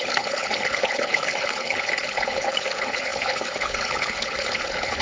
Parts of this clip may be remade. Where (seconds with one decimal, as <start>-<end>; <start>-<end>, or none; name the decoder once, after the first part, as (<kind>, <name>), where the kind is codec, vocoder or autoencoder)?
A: 0.0-5.0 (codec, HILCodec)